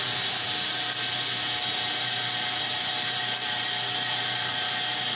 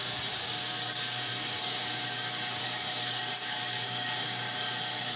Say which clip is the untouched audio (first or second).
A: first